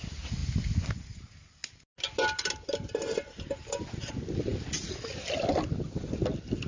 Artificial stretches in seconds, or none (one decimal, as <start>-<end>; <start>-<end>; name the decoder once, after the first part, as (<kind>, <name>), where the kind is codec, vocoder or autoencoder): none